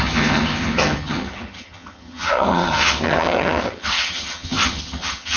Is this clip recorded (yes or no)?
no